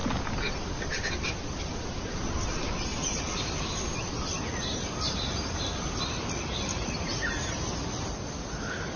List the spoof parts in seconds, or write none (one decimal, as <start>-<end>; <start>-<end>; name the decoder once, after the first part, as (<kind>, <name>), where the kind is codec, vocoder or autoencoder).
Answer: none